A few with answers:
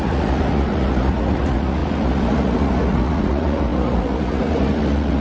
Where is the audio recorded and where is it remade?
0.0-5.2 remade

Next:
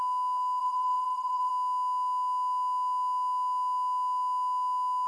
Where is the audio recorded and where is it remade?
0.0-0.6 recorded; 0.6-1.5 remade; 1.5-5.1 recorded

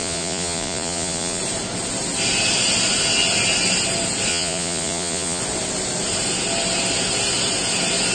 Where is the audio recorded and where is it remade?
0.0-1.4 remade; 1.4-4.3 recorded; 4.3-5.4 remade; 5.4-8.1 recorded

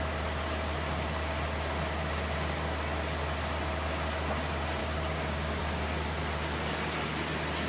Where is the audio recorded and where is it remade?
0.0-4.8 recorded; 4.8-5.6 remade; 5.6-7.7 recorded

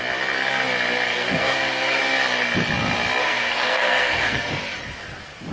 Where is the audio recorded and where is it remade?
0.0-1.1 recorded; 1.1-2.0 remade; 2.0-3.2 recorded; 3.2-4.5 remade; 4.5-5.5 recorded